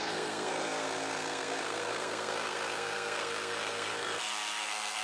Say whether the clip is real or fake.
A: fake